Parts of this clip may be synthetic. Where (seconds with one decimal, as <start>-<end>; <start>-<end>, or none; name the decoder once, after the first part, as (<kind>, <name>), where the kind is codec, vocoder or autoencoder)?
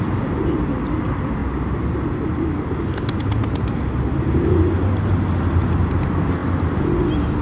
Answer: none